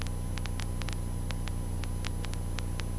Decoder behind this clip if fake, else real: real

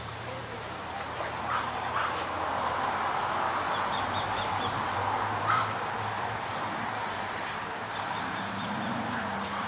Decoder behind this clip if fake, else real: fake, vocoder, BigVGAN v2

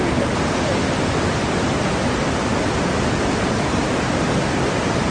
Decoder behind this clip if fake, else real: real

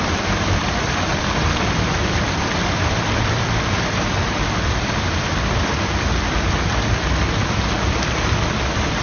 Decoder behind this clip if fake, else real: fake, vocoder, BigVGAN v2